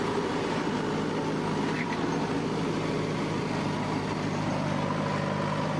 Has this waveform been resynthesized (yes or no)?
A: no